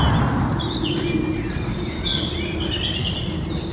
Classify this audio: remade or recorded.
recorded